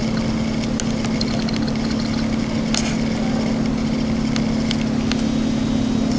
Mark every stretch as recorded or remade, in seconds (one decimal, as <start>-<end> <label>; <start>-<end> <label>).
0.0-6.2 recorded